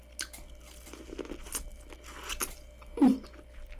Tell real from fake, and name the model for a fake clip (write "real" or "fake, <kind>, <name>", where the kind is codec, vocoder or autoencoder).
real